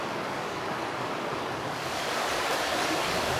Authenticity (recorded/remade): remade